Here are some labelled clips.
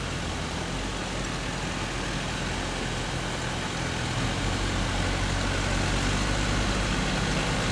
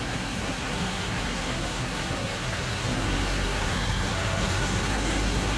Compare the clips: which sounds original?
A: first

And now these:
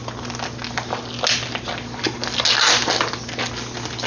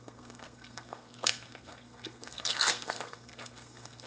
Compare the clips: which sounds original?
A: first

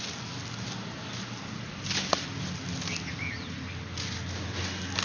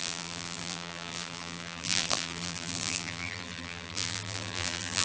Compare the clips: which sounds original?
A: first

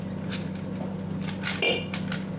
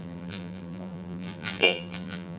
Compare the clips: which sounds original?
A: first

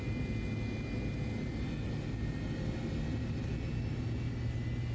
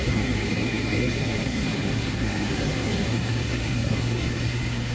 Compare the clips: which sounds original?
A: first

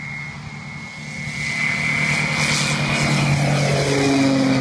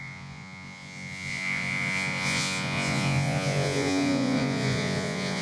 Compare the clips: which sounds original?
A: first